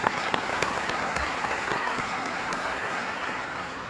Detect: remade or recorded remade